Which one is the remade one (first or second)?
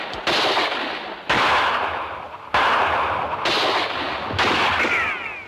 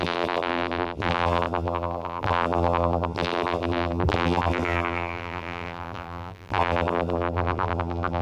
second